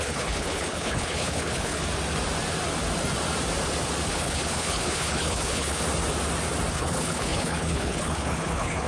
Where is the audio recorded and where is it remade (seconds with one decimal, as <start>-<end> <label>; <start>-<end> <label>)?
0.0-1.8 remade; 1.8-4.1 recorded; 4.1-5.8 remade; 5.8-6.7 recorded; 6.7-8.9 remade